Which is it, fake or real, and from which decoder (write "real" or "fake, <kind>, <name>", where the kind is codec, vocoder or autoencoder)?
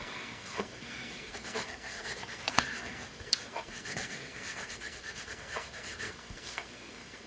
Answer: fake, codec, SNAC